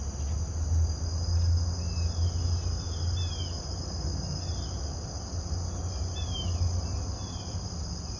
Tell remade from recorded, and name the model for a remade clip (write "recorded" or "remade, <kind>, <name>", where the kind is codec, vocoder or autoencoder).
recorded